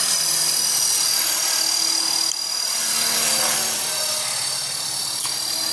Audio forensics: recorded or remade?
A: recorded